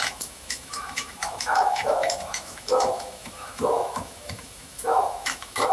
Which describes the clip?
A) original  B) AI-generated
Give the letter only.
B